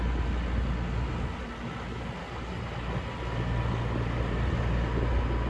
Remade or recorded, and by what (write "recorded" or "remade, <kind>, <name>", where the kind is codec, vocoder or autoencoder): recorded